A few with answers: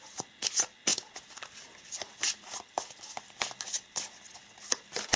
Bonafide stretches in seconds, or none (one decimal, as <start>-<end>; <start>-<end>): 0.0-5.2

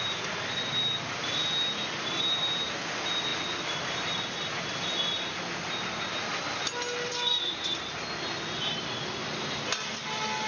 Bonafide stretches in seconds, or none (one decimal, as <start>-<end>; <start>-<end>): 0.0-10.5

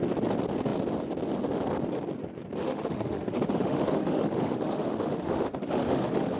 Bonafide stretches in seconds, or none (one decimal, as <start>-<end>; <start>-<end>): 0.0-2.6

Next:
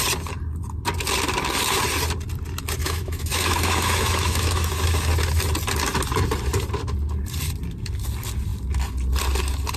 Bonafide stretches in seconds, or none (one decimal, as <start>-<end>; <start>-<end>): 0.0-2.8; 4.7-9.8